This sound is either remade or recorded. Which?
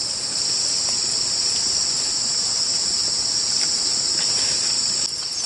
recorded